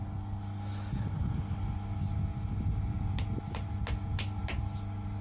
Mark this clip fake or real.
real